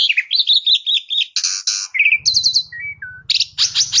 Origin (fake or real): real